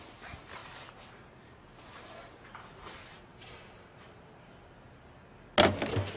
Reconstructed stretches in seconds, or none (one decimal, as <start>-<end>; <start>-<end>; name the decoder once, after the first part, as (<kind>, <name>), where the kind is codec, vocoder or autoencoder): 3.3-4.5 (vocoder, BigVGAN v2)